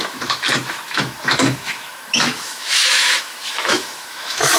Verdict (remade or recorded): remade